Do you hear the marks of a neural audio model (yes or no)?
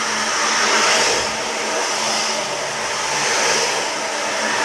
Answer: no